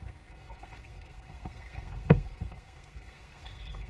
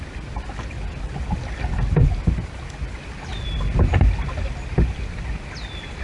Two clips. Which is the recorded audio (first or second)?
second